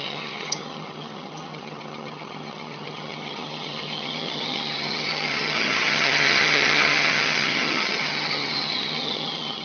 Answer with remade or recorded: remade